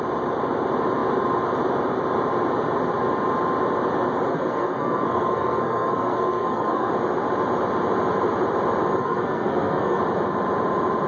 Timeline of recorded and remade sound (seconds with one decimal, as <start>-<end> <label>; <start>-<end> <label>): 0.0-4.3 recorded; 4.3-6.9 remade; 6.9-9.0 recorded; 9.0-10.0 remade; 10.0-11.1 recorded

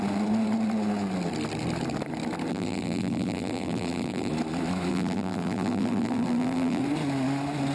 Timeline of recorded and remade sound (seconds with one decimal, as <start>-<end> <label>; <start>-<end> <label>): 0.0-2.5 recorded; 2.5-4.3 remade; 4.3-4.9 recorded; 4.9-6.8 remade; 6.8-7.7 recorded